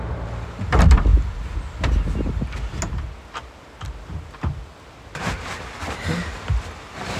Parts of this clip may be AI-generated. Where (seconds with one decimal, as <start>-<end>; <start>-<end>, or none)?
none